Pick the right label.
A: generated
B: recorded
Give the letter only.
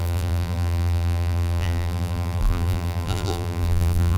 A